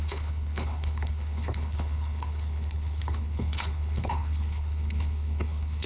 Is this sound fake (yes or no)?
yes